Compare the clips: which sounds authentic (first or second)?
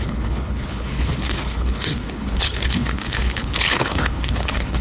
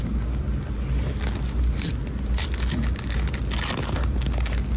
second